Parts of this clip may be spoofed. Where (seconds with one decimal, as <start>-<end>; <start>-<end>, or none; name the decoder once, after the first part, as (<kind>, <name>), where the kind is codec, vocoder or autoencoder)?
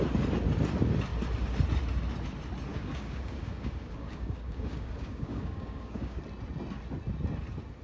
2.7-6.2 (codec, DAC)